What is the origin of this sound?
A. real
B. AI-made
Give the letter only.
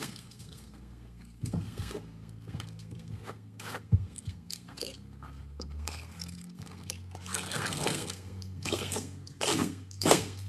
B